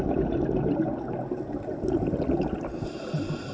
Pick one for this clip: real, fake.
real